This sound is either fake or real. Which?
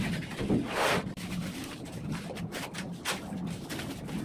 real